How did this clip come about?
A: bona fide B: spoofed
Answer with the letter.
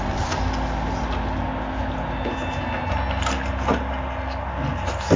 A